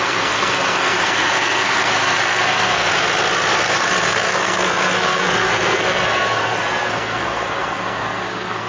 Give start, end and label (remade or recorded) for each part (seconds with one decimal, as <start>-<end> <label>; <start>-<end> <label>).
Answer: 0.0-2.9 remade; 2.9-3.5 recorded; 3.5-8.7 remade